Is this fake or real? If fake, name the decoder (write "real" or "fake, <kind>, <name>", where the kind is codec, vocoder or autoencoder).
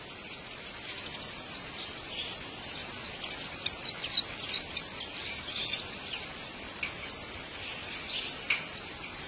real